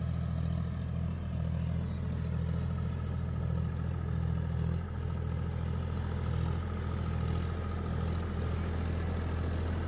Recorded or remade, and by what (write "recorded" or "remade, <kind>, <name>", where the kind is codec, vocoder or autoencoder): recorded